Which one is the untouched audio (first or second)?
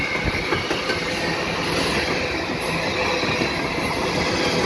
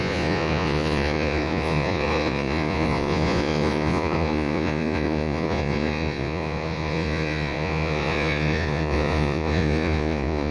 first